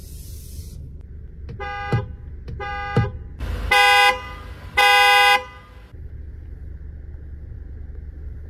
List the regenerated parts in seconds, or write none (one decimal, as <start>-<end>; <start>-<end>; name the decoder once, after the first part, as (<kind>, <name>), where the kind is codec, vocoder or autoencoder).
none